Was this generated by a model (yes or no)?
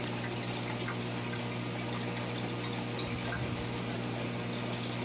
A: no